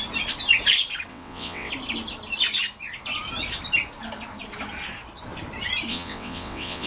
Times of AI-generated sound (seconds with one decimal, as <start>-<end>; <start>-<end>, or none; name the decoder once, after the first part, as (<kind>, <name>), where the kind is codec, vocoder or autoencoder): 1.1-1.7 (vocoder, WaveNeXt); 5.9-6.9